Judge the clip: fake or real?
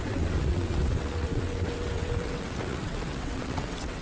fake